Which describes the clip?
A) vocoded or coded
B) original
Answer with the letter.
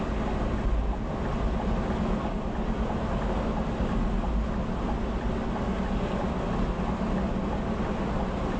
B